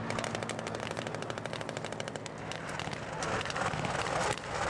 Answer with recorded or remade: recorded